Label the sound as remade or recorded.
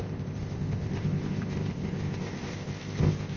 remade